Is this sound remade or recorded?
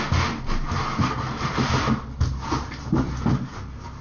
recorded